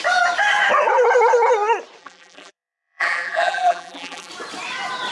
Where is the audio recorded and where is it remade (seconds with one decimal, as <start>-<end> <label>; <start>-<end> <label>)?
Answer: 0.0-2.0 recorded; 2.0-4.3 remade; 4.3-5.1 recorded